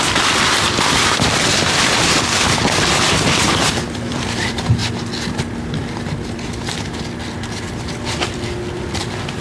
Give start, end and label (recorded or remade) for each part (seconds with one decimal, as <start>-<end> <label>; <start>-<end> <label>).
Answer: 0.0-4.8 remade; 4.8-5.5 recorded; 5.5-9.4 remade